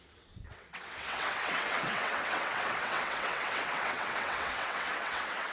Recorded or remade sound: remade